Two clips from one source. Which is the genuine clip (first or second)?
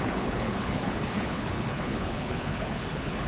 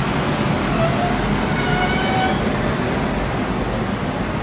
second